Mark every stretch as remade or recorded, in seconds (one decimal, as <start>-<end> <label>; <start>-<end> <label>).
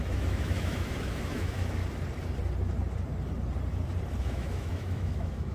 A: 0.0-1.8 remade; 1.8-4.2 recorded; 4.2-5.5 remade